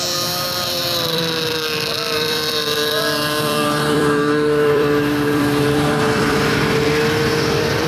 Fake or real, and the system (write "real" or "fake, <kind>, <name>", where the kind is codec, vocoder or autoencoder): fake, vocoder, BigVGAN v2